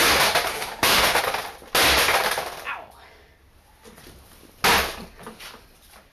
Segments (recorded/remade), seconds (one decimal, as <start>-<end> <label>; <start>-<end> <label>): 0.0-0.5 recorded; 0.5-1.2 remade; 1.2-6.1 recorded